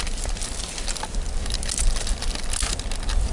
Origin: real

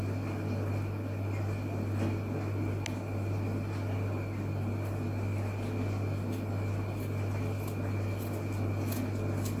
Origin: real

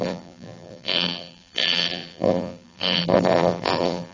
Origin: fake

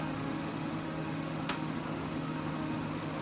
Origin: fake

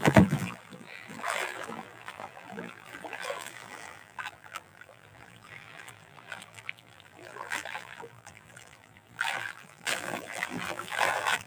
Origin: fake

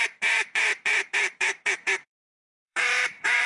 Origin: fake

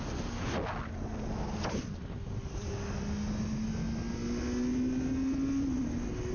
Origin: real